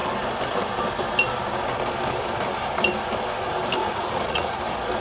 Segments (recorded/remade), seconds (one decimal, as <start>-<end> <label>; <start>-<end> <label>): 0.0-3.8 recorded; 3.8-4.6 remade; 4.6-5.0 recorded